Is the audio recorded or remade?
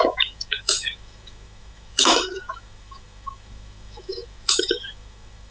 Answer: remade